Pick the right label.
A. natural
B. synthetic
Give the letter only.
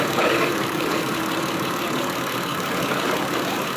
B